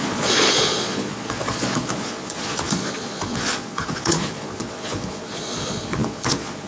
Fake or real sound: fake